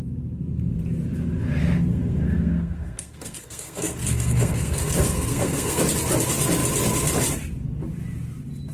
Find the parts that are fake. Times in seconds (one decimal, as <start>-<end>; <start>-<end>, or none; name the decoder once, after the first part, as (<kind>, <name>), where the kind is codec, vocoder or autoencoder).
1.9-5.8 (codec, SNAC)